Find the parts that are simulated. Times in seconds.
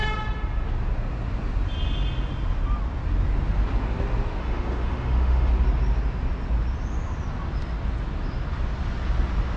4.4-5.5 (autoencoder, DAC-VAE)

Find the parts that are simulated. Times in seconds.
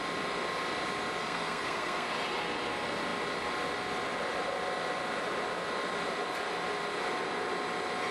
1.2-2.1 (codec, SNAC)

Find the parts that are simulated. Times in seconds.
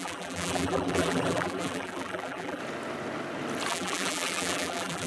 0.0-2.6 (vocoder, BigVGAN v2); 3.7-5.1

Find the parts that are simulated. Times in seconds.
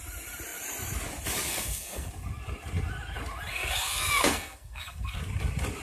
1.5-2.1 (codec, SNAC); 3.5-5.2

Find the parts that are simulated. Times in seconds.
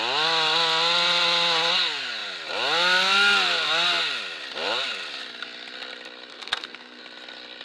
6.3-7.0 (codec, SNAC)